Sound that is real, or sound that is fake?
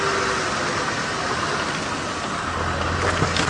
real